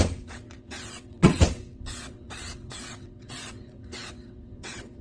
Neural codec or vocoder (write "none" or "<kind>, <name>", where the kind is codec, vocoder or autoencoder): vocoder, WaveNeXt